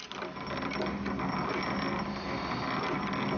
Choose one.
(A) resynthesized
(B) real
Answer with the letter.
B